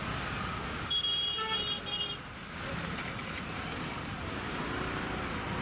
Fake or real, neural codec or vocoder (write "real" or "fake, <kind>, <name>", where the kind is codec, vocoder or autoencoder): real